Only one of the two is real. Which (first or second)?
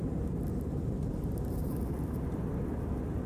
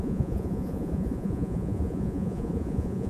first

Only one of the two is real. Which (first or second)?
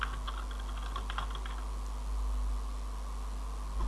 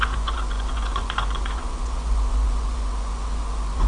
first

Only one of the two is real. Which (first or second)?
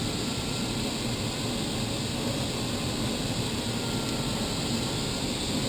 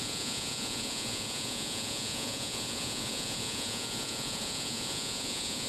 first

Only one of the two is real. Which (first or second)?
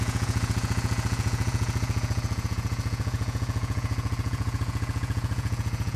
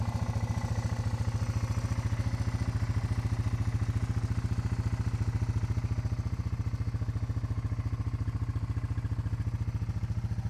second